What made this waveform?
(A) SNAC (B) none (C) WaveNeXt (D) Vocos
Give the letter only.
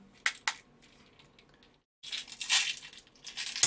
B